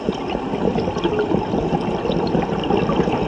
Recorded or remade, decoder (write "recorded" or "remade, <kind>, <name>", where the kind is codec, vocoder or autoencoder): recorded